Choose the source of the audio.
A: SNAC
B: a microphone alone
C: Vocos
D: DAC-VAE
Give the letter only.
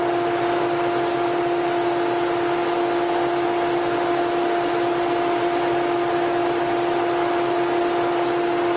B